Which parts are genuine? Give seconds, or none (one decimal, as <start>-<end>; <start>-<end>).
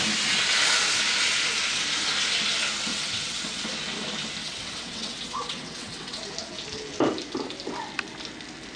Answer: 0.0-2.9; 3.7-4.4; 6.2-8.8